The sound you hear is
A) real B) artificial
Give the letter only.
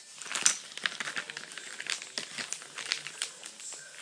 A